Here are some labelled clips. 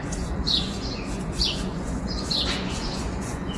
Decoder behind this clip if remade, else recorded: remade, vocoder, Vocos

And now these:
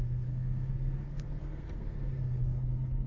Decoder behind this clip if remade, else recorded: remade, codec, SNAC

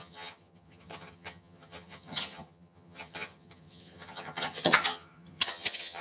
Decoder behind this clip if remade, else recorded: remade, vocoder, HiFi-GAN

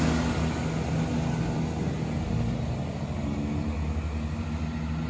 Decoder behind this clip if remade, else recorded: recorded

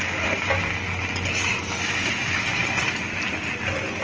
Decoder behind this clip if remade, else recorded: recorded